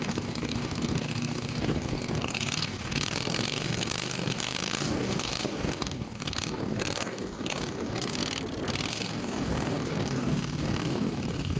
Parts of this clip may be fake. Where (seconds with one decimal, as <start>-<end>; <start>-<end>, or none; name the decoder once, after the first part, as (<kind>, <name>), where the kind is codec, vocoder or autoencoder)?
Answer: 0.0-8.2 (codec, DAC); 8.9-11.6